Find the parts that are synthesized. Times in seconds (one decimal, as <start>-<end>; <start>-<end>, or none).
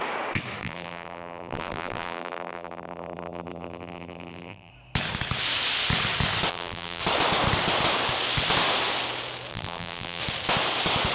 0.6-4.7; 6.5-7.0; 9.5-10.2